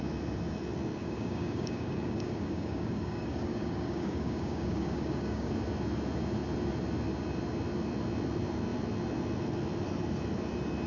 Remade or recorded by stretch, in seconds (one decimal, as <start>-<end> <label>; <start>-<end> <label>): 0.0-1.0 recorded; 1.0-5.5 remade; 5.5-10.9 recorded